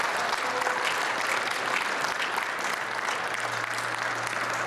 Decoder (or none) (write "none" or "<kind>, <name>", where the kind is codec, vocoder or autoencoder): none